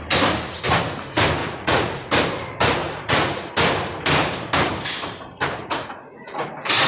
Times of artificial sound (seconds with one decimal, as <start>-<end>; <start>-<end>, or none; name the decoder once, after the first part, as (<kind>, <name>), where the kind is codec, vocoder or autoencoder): 1.4-2.1 (vocoder, Vocos); 2.8-3.5; 5.6-6.5